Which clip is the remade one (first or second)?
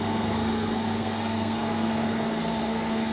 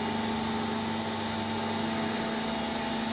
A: first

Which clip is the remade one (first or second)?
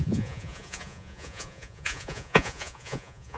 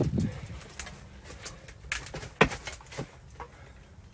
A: first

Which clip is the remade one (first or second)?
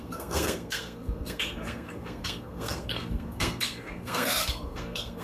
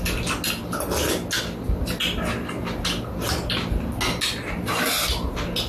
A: first